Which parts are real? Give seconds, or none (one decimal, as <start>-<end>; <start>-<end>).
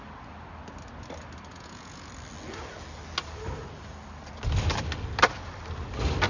0.0-1.5; 2.1-6.3